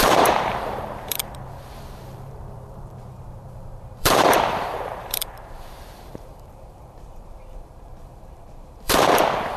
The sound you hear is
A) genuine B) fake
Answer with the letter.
B